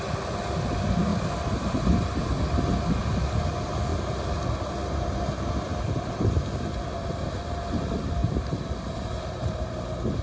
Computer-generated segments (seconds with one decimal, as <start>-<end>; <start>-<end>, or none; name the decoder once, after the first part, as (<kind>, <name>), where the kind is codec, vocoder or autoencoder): 8.2-10.2 (vocoder, BigVGAN v2)